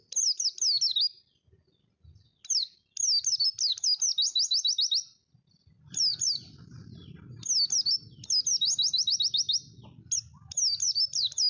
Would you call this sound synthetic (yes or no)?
no